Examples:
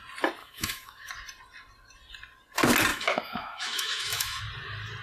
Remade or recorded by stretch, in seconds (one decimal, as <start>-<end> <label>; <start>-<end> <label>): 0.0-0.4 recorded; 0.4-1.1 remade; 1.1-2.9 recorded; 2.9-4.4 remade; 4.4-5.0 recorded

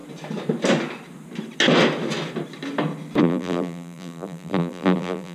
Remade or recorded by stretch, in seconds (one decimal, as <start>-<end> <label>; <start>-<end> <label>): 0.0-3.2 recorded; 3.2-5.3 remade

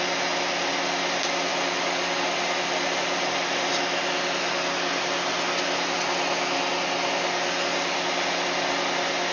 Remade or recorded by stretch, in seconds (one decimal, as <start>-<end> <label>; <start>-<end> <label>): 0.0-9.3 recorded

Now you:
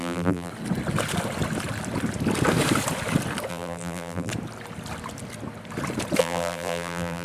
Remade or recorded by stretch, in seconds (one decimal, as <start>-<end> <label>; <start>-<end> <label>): 0.0-0.5 remade; 0.5-3.5 recorded; 3.5-4.3 remade; 4.3-6.2 recorded; 6.2-7.2 remade

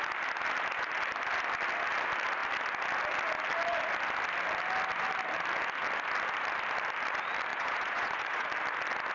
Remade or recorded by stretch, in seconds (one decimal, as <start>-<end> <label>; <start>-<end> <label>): 0.0-7.5 recorded; 7.5-8.5 remade; 8.5-9.1 recorded

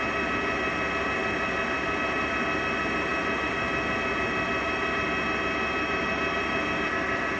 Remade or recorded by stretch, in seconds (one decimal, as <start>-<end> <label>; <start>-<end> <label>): 0.0-7.4 recorded